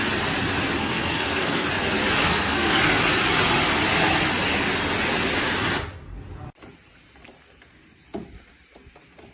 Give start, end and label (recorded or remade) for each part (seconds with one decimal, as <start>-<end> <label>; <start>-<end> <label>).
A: 0.0-0.8 recorded; 0.8-1.7 remade; 1.7-2.2 recorded; 2.2-3.0 remade; 3.0-9.3 recorded